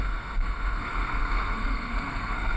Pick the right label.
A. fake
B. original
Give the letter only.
A